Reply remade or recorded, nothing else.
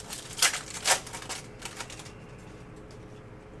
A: recorded